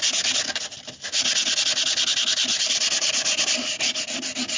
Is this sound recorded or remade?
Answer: recorded